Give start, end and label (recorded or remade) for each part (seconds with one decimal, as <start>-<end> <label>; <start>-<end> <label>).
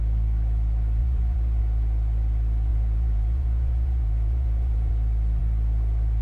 0.0-1.0 recorded; 1.0-1.6 remade; 1.6-2.7 recorded; 2.7-4.9 remade; 4.9-6.2 recorded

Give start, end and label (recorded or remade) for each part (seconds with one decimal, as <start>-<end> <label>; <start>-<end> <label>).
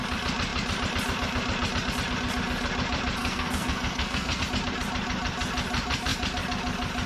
0.0-3.2 recorded; 3.2-4.4 remade; 4.4-7.1 recorded